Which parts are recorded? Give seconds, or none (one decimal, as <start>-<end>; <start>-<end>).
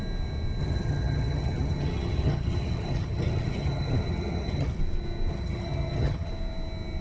0.0-0.6; 4.8-5.3; 6.3-7.0